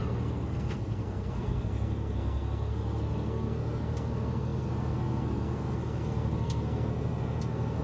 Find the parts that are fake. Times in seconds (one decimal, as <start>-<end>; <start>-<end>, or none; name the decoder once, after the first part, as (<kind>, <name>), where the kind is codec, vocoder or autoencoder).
0.0-7.8 (codec, SNAC)